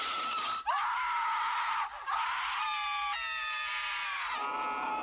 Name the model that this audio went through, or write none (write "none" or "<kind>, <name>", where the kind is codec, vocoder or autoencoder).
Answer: none